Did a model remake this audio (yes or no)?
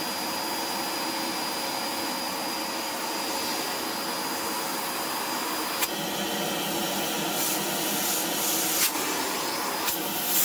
no